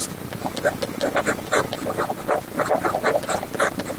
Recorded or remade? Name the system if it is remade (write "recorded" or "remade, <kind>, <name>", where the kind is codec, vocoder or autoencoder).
recorded